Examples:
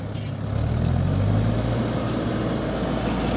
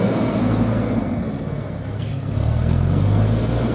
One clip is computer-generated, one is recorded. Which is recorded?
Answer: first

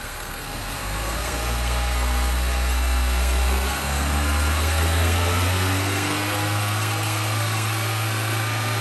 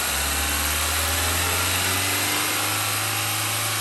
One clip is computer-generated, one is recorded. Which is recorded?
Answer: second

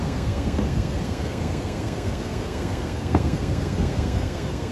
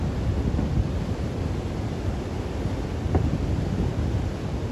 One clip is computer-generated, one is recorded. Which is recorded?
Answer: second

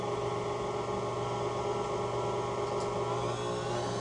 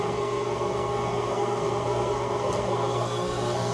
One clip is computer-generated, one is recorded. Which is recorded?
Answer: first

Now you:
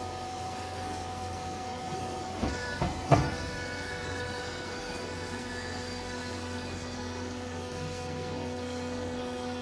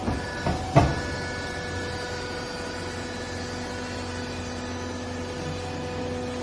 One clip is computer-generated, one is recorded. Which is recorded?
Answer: second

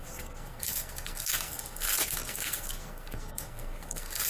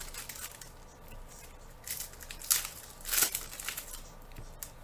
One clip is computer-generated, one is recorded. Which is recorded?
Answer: second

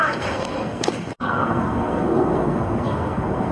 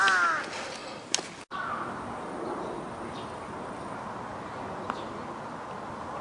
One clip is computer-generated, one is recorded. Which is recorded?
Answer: second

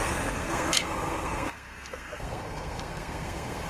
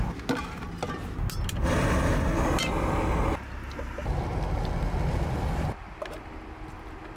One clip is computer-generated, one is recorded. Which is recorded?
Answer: second